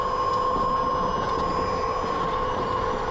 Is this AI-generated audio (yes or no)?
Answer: no